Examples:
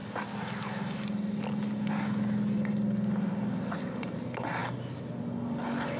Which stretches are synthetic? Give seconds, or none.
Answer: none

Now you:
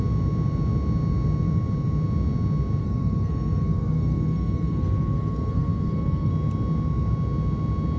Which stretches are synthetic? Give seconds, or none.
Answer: 2.8-6.3 (codec, SNAC)

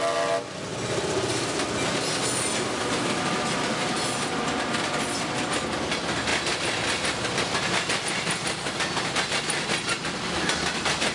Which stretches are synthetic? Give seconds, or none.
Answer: 6.3-10.0 (vocoder, BigVGAN v2)